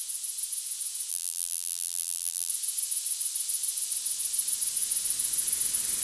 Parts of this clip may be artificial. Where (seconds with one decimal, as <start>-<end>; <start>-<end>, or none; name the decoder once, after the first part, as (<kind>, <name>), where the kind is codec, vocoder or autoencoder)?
1.1-2.5 (vocoder, BigVGAN v2)